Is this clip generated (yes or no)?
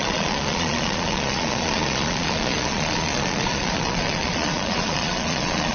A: yes